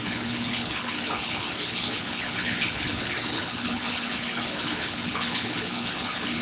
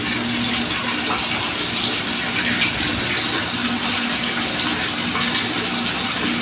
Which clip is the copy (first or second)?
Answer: first